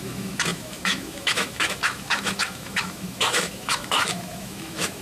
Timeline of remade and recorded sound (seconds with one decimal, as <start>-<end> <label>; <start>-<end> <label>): 0.0-5.0 remade